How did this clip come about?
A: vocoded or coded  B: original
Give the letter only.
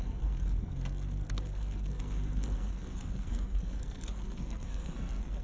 A